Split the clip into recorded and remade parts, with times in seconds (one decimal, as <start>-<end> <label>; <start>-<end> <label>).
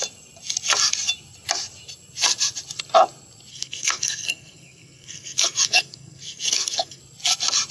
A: 0.0-3.5 recorded; 3.5-7.0 remade; 7.0-7.7 recorded